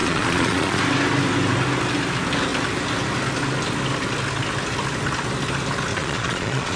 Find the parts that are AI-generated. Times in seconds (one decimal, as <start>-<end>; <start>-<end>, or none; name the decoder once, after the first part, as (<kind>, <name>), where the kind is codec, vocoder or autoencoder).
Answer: 0.0-0.8 (vocoder, Vocos); 5.9-6.8